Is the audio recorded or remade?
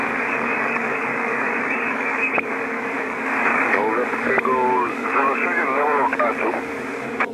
remade